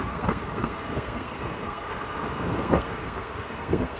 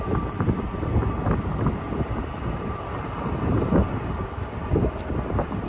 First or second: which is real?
second